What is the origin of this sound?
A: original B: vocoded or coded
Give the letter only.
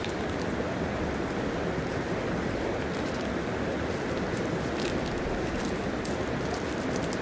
A